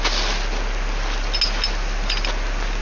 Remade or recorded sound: recorded